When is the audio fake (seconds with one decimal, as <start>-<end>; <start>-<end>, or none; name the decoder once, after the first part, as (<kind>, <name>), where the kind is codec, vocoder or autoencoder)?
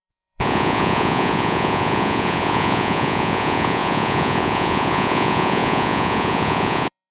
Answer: 0.0-7.1 (vocoder, Vocos)